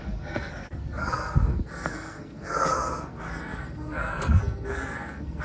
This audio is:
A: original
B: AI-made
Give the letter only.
B